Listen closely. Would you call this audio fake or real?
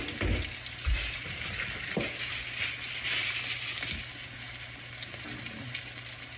real